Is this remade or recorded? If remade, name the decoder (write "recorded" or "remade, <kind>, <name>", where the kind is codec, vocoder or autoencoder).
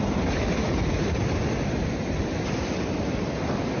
recorded